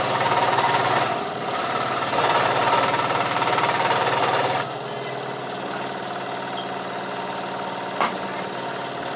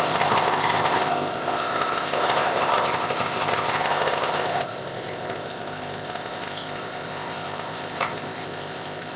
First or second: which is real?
first